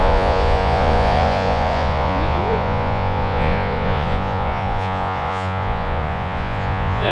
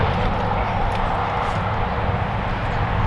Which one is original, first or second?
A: second